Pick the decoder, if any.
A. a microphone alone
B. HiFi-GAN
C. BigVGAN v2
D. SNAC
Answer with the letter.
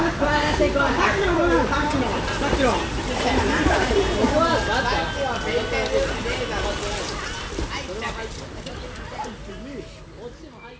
A